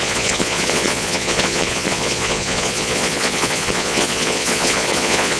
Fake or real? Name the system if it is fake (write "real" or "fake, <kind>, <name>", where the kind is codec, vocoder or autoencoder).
fake, vocoder, Vocos